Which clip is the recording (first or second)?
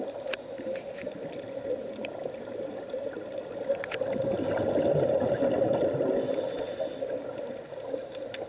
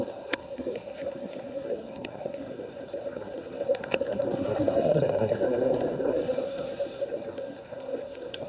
first